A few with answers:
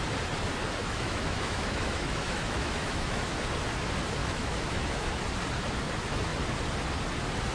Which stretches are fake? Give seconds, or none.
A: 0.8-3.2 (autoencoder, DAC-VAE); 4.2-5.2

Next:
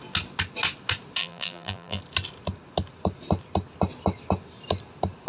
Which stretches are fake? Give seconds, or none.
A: 1.2-2.0 (vocoder, BigVGAN v2)

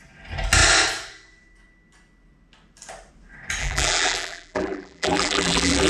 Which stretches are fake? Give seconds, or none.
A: 3.6-5.9 (vocoder, BigVGAN v2)

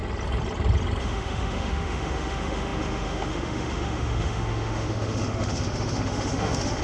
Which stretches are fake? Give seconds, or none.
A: 1.0-6.8 (autoencoder, DAC-VAE)

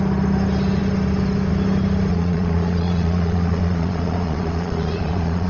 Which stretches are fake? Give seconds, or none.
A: 2.1-5.5 (vocoder, Vocos)